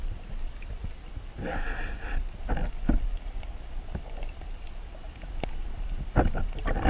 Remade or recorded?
remade